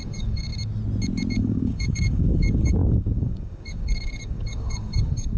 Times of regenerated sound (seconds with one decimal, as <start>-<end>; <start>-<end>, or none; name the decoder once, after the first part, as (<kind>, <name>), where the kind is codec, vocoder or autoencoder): 0.0-0.5 (codec, DAC); 1.3-5.4